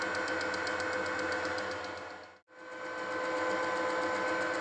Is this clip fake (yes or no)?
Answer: no